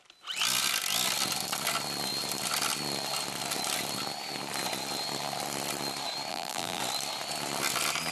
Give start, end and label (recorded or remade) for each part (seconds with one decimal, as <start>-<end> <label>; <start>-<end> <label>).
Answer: 0.0-6.3 recorded; 6.3-6.8 remade; 6.8-8.1 recorded